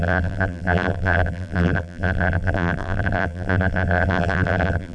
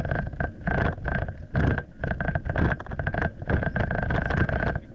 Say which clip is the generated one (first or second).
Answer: first